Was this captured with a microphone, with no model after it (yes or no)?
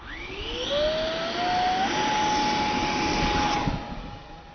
yes